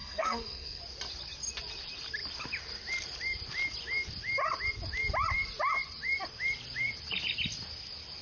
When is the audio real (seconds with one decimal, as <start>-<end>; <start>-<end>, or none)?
0.8-8.2